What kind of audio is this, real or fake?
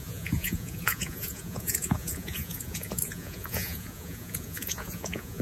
fake